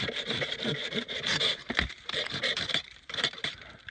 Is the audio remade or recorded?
remade